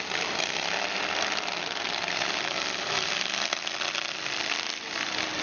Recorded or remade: recorded